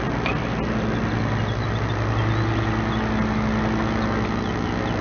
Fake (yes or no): no